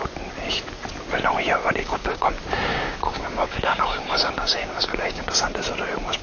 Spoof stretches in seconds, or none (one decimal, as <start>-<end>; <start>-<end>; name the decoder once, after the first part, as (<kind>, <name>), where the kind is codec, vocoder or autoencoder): 1.8-2.3 (codec, DAC); 2.7-5.3

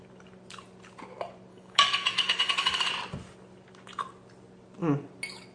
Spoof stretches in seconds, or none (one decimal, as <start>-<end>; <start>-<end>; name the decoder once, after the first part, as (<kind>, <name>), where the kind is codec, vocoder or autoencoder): 1.5-2.9 (codec, DAC)

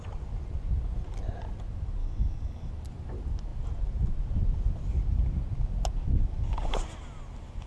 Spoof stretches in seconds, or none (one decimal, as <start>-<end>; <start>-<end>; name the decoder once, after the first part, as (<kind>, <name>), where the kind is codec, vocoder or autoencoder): 2.0-2.7 (codec, DAC)

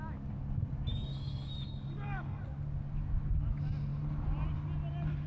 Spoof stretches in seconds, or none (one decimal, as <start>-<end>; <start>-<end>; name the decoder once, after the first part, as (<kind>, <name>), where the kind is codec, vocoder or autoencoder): 0.9-2.4 (codec, DAC)

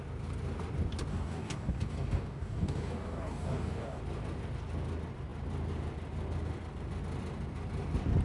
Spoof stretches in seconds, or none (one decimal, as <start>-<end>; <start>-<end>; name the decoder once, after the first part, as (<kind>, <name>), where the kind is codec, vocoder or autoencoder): 1.1-4.0 (codec, DAC)